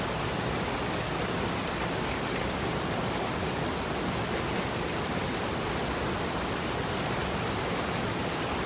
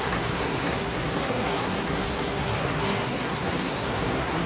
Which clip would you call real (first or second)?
first